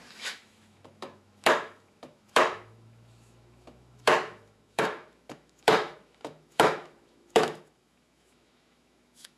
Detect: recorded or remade remade